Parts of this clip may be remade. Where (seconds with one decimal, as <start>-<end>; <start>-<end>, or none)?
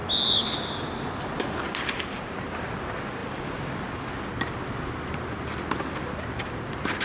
3.2-3.8